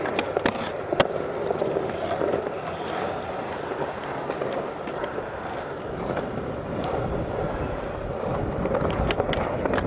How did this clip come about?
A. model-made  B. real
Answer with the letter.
B